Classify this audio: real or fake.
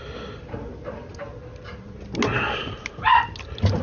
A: real